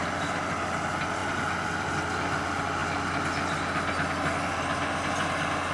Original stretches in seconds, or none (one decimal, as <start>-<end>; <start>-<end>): 0.0-5.7

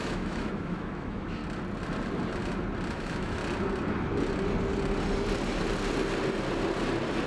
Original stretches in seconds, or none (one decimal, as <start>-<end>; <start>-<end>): 1.4-2.9; 3.4-7.3

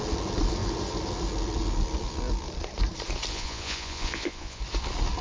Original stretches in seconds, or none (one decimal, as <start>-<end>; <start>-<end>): 0.0-3.3; 4.6-5.2

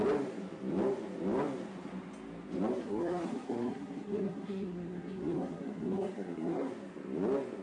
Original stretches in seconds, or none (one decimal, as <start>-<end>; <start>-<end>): 0.0-2.8; 6.7-7.6

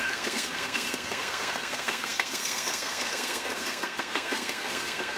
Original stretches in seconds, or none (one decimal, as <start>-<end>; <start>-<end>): none

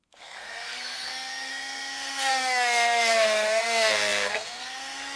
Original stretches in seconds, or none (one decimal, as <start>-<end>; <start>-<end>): none

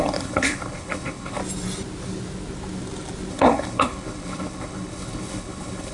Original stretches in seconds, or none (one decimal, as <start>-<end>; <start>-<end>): 1.4-3.3